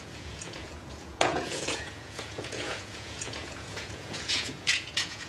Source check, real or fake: fake